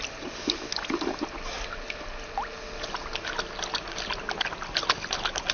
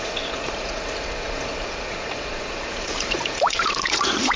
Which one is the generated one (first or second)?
second